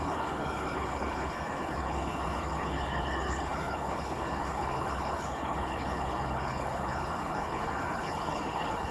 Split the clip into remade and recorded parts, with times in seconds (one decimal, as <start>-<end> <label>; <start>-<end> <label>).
0.0-8.9 remade